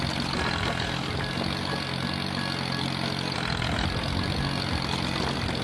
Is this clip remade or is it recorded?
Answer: recorded